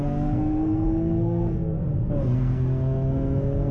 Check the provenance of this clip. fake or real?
fake